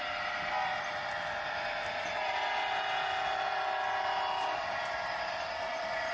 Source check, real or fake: real